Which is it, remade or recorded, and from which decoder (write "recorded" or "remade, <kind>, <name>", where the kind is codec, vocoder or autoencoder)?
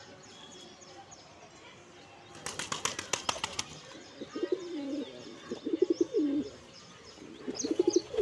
recorded